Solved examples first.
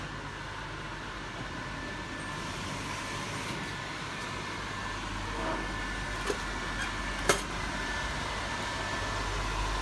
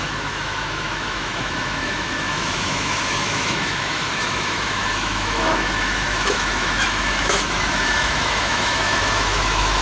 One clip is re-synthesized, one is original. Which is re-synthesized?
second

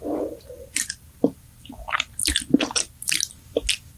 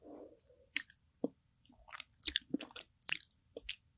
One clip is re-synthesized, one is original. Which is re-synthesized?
second